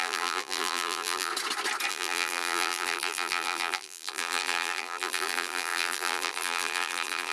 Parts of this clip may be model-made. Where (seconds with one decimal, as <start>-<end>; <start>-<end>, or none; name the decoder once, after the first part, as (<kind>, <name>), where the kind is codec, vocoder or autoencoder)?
0.0-1.3 (vocoder, BigVGAN v2); 1.9-7.3